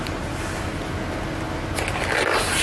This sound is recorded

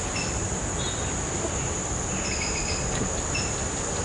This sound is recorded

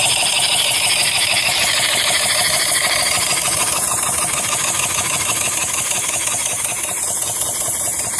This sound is recorded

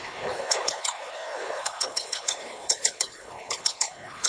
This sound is remade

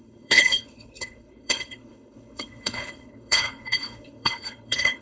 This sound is remade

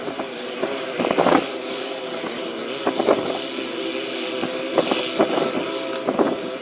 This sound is recorded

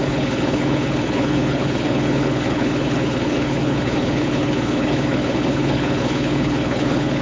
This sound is remade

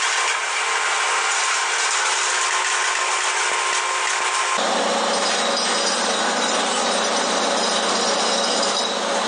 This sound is recorded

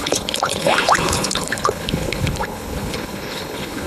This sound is remade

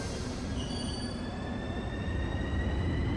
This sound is recorded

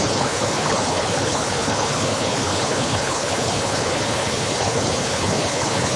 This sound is remade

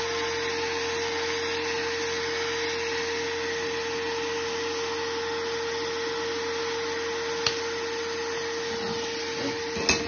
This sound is recorded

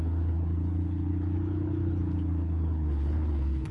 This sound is remade